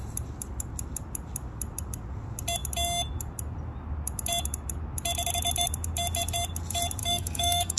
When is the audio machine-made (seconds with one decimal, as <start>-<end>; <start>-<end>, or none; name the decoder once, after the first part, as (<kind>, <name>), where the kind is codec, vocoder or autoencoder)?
7.0-7.8 (codec, SNAC)